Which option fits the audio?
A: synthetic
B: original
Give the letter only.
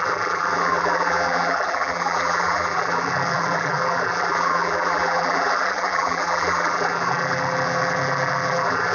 A